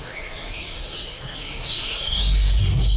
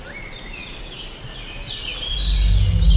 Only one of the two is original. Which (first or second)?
second